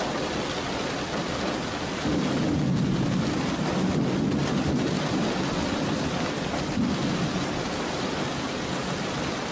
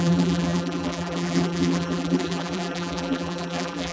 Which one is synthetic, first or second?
second